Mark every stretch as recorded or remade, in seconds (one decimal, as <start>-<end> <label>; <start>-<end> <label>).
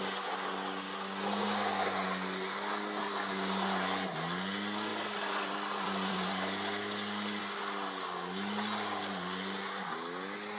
0.0-4.9 recorded; 4.9-7.4 remade; 7.4-10.6 recorded